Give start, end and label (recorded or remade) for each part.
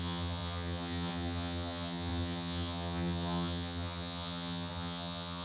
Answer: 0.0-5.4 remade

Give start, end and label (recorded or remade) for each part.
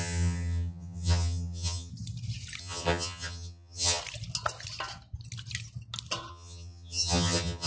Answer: 0.0-1.9 remade; 1.9-2.6 recorded; 2.6-4.0 remade; 4.0-6.3 recorded; 6.3-7.7 remade